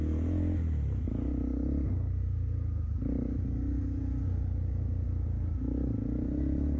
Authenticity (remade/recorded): recorded